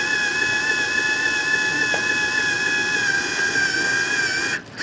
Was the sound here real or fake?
real